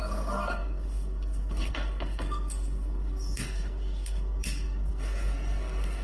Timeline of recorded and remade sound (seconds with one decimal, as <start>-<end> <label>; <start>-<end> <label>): 0.0-6.0 remade